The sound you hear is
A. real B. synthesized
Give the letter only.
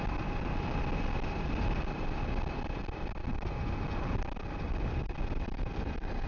A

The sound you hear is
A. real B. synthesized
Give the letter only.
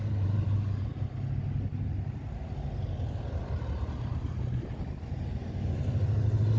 A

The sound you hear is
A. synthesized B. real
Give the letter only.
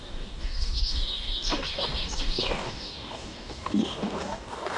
A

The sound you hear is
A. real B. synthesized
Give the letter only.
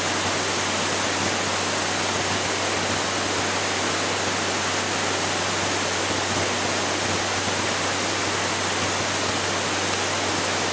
A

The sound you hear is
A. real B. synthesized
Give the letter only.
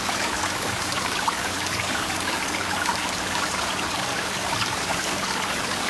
B